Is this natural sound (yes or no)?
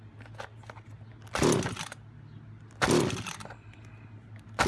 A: yes